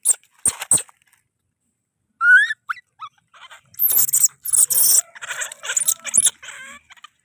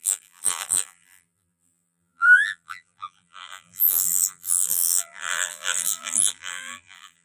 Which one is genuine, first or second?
first